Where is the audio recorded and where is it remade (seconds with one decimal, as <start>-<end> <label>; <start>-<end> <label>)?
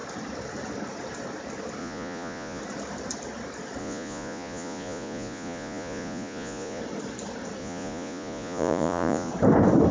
0.0-1.8 recorded; 1.8-2.6 remade; 2.6-3.8 recorded; 3.8-6.8 remade; 6.8-7.6 recorded; 7.6-9.3 remade; 9.3-9.9 recorded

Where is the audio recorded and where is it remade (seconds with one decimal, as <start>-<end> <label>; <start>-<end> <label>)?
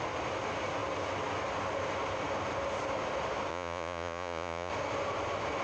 0.0-3.5 recorded; 3.5-4.7 remade; 4.7-5.6 recorded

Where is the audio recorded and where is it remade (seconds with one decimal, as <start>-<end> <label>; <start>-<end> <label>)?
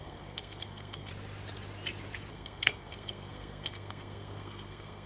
0.0-1.1 remade; 1.1-2.3 recorded; 2.3-5.1 remade